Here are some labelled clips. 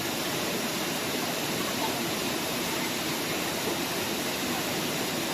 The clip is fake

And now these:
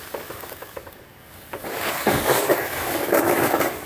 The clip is fake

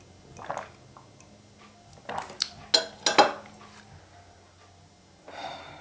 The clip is real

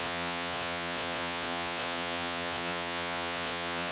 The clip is fake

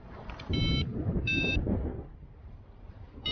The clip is fake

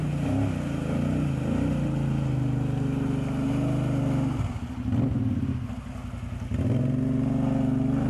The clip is real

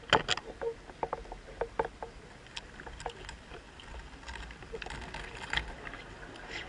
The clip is real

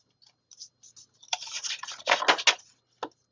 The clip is real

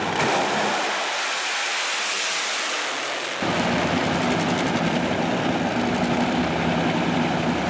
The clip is real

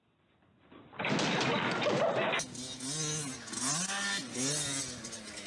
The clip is real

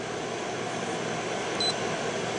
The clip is real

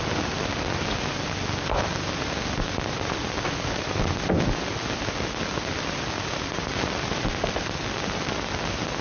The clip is real